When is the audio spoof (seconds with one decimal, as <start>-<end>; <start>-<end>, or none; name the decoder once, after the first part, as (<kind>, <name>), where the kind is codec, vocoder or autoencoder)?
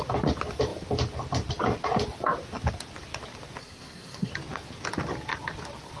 3.6-4.3 (codec, SNAC)